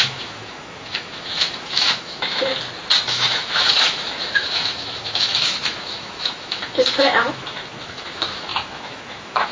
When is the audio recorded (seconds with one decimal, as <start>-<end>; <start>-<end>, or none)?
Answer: 2.5-3.1